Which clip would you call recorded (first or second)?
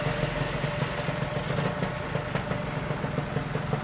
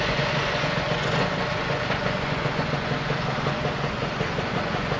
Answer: first